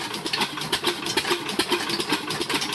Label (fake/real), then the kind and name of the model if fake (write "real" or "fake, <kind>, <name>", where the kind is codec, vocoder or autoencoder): real